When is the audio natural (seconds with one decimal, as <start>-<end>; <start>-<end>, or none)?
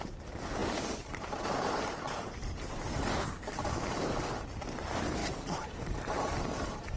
none